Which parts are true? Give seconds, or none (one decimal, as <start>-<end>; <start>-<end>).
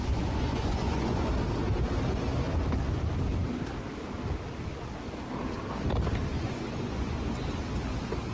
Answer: 1.3-6.3; 7.5-8.3